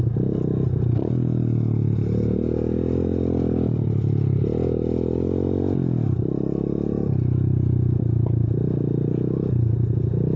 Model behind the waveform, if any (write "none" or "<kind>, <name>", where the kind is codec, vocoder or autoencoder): none